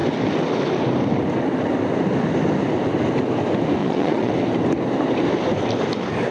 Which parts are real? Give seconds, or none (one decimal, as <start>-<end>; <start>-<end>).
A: 0.0-3.8; 4.3-6.3